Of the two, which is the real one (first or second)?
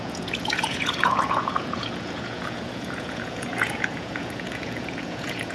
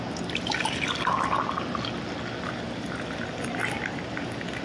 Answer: second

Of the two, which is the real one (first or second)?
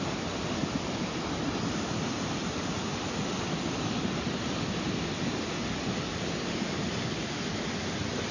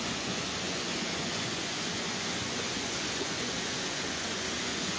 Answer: first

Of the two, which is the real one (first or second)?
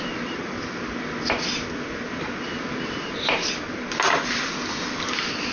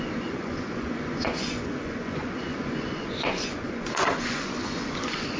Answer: first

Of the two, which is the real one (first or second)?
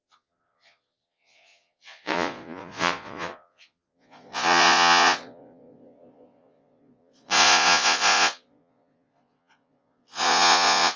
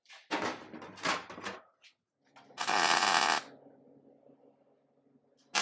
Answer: second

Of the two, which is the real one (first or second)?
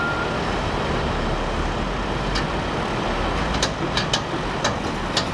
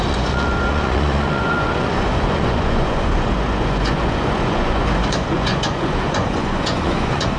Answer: first